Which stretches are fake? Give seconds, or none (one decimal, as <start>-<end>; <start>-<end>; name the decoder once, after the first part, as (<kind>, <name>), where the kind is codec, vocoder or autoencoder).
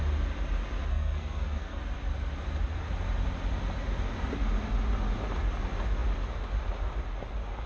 0.9-1.8 (codec, SNAC)